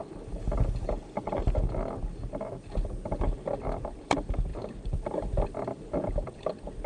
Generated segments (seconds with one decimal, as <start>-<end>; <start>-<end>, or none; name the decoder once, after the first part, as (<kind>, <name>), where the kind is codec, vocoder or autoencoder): 3.2-6.9 (vocoder, BigVGAN v2)

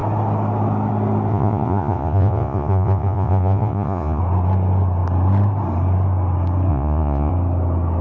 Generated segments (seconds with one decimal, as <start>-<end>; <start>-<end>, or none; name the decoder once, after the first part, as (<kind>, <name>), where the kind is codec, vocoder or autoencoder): 1.3-4.2 (vocoder, Vocos); 6.7-7.3

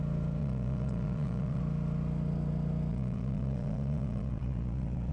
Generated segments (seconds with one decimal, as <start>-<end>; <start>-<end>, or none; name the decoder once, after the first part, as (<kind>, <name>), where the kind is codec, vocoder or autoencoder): 0.4-1.6 (vocoder, Vocos); 2.9-5.1

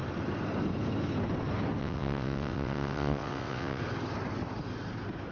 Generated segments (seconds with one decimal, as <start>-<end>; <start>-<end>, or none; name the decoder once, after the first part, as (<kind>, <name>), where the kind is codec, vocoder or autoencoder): 1.8-3.8 (vocoder, WaveNeXt)

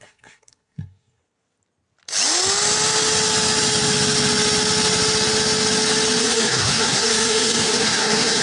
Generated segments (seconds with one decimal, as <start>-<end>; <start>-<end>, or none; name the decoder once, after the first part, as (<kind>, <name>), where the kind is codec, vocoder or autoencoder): 0.0-1.2 (codec, SNAC); 6.2-8.4

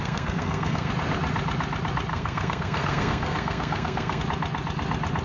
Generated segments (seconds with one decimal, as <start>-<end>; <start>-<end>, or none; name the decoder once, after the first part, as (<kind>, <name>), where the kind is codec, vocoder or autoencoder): 0.0-0.9 (codec, SNAC); 2.1-4.2

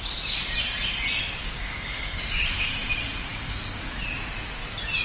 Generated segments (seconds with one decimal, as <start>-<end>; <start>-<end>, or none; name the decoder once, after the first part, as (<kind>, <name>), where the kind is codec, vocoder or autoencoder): 1.4-2.7 (codec, DAC); 3.3-3.8